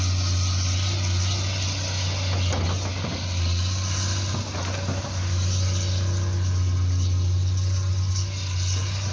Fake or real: real